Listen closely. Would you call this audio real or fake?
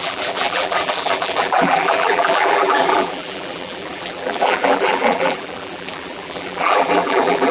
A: fake